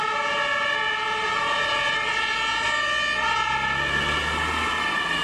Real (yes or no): yes